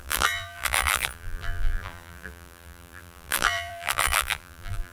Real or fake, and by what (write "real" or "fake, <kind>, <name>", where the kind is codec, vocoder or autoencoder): fake, vocoder, BigVGAN v2